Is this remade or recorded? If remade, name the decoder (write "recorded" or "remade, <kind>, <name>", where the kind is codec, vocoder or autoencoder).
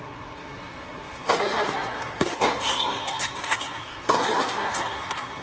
remade, codec, SNAC